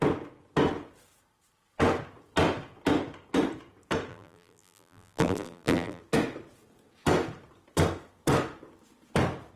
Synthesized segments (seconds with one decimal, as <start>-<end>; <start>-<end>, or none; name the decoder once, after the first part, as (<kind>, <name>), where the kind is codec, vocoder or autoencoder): 4.1-6.0 (vocoder, BigVGAN v2)